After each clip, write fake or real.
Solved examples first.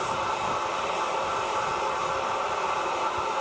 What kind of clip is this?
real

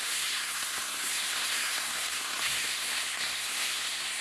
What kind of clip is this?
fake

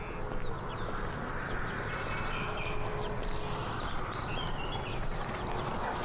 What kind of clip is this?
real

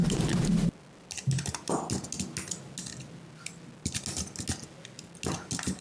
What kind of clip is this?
real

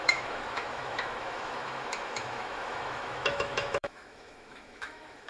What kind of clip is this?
fake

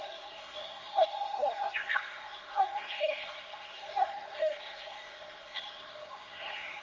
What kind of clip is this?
fake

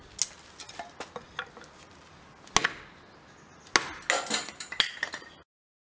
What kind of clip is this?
real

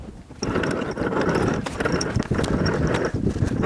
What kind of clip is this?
real